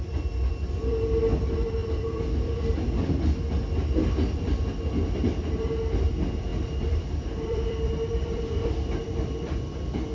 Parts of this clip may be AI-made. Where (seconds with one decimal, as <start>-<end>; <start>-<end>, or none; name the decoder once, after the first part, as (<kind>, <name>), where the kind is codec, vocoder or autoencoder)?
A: 1.8-2.9 (vocoder, BigVGAN v2); 6.5-9.6

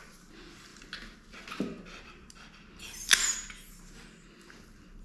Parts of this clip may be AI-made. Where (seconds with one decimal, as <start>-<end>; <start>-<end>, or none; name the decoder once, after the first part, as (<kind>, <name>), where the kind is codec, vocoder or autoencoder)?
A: none

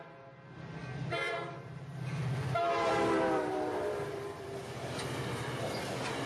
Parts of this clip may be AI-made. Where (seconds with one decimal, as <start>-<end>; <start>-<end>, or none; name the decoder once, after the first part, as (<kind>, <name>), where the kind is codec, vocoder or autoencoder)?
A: 0.8-4.6 (vocoder, BigVGAN v2)

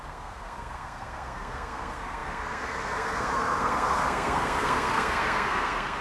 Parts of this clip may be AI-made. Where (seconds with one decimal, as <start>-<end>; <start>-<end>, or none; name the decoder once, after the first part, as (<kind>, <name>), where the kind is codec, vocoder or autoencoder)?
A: 0.0-6.0 (codec, SNAC)

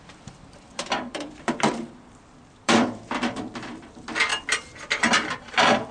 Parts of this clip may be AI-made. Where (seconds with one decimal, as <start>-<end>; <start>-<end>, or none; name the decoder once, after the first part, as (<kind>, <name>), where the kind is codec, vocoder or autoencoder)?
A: 0.0-4.3 (vocoder, BigVGAN v2); 5.5-5.9

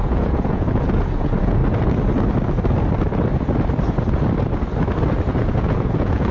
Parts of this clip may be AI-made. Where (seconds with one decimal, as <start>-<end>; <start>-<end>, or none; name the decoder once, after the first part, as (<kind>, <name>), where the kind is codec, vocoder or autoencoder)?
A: 0.0-1.6 (vocoder, Vocos); 5.4-6.3